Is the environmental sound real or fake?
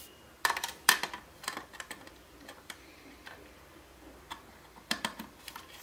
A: fake